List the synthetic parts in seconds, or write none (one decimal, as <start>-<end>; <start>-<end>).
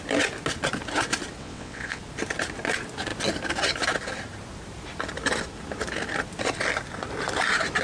1.4-2.0